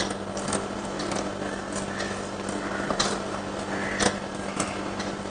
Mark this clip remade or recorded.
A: recorded